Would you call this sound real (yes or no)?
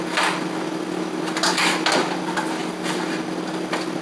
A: yes